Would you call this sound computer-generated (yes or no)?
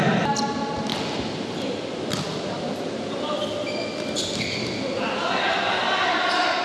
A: no